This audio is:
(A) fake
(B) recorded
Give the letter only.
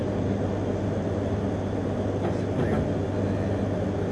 B